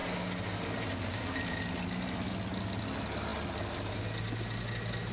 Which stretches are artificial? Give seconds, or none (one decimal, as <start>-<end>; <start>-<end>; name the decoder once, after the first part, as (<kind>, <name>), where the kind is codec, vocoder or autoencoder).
none